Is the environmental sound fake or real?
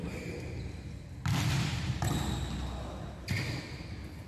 real